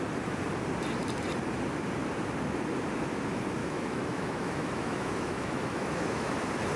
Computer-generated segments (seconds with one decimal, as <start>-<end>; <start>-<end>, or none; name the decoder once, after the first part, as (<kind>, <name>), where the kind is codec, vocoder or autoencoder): 3.6-6.3 (autoencoder, DAC-VAE)